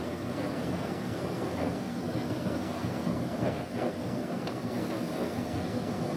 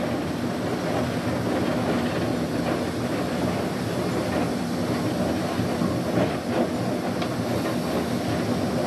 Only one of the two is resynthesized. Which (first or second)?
first